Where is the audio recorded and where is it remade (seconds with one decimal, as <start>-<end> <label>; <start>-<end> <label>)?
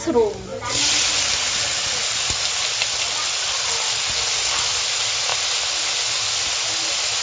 0.0-7.2 recorded